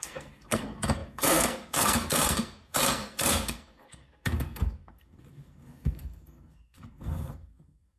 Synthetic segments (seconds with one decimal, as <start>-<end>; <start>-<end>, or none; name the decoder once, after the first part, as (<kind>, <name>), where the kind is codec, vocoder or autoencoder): 0.0-8.0 (codec, SNAC)